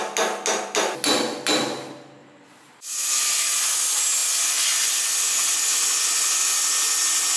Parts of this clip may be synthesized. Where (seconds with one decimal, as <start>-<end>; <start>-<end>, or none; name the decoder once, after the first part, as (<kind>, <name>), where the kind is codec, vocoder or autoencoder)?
2.2-3.7 (vocoder, BigVGAN v2)